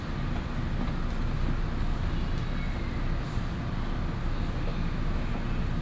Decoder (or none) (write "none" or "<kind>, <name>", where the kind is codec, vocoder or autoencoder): none